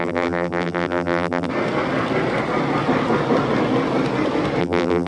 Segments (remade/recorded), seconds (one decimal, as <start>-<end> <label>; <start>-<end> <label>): 0.0-1.5 remade; 1.5-4.6 recorded; 4.6-5.1 remade